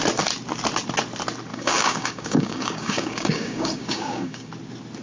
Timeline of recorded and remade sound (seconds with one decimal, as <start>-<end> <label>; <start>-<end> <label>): 0.0-1.5 recorded; 1.5-4.5 remade; 4.5-5.0 recorded

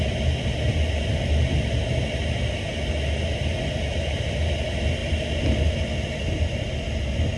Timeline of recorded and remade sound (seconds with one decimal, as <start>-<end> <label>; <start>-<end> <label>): 0.0-7.4 recorded

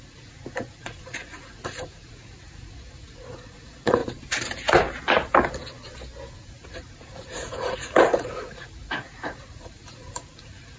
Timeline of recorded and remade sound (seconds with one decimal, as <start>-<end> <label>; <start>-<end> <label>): 0.0-4.0 remade; 4.0-6.3 recorded; 6.3-10.8 remade

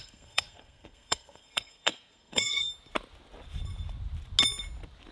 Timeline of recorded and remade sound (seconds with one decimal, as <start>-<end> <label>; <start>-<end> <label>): 0.0-2.7 remade; 2.7-5.1 recorded